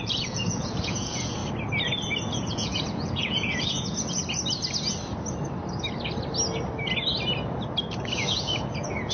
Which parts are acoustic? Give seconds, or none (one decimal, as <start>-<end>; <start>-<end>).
1.4-2.3; 4.2-8.3